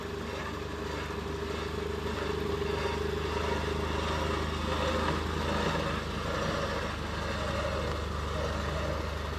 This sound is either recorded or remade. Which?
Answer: recorded